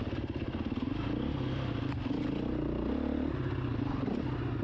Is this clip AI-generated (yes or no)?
no